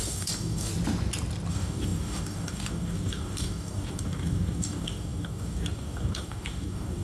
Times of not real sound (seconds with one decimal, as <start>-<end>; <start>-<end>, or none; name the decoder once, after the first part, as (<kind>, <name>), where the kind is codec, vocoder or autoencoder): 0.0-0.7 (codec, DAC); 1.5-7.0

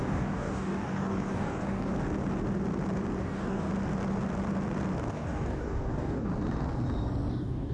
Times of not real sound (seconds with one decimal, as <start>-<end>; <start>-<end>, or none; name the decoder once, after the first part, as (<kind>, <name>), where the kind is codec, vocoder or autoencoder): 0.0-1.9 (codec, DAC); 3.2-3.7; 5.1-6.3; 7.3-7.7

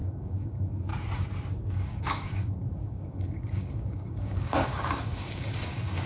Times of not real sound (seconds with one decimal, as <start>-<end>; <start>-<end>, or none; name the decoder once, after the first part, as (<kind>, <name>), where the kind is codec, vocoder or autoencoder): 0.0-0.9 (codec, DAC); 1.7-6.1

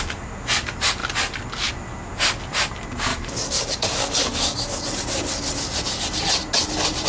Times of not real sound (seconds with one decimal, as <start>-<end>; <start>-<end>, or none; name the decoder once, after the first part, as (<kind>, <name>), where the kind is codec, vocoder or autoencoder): 3.1-4.8 (codec, DAC)

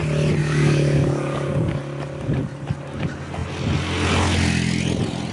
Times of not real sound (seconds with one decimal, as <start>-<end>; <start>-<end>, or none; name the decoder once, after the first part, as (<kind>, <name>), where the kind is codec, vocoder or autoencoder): 0.4-1.8 (codec, DAC)